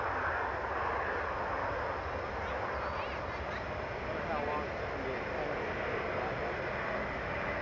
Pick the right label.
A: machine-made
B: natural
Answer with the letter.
B